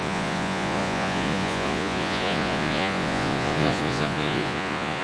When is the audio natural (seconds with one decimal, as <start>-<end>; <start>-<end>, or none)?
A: none